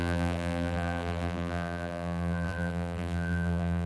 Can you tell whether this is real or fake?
fake